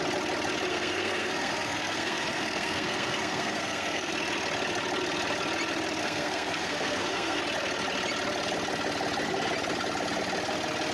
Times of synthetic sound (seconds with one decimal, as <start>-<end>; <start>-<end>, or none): 0.7-4.1; 6.0-7.4